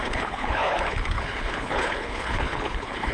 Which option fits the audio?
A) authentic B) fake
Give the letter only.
B